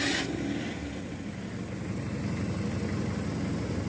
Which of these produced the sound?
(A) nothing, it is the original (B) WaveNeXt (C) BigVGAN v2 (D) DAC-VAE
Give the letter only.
A